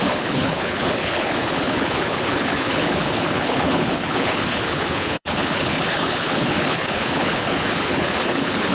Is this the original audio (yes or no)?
no